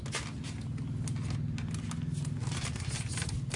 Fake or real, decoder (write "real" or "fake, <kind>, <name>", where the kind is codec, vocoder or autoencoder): real